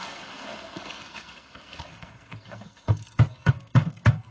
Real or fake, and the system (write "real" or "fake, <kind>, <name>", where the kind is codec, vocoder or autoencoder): fake, codec, SNAC